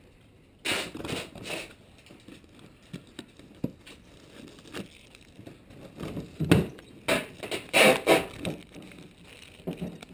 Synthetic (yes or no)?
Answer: no